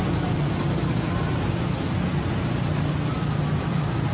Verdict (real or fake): real